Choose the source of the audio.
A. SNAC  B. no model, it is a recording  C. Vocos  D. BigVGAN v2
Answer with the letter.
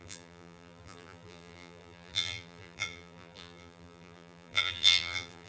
D